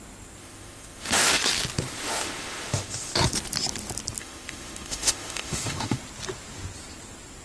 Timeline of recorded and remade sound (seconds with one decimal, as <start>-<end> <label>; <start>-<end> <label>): 0.0-0.4 recorded; 0.4-1.4 remade; 1.4-2.0 recorded; 2.0-3.1 remade; 3.1-4.2 recorded; 4.2-6.0 remade; 6.0-7.4 recorded